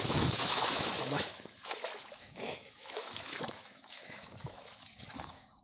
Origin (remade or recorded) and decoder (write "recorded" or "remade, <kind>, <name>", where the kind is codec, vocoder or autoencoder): remade, autoencoder, DAC-VAE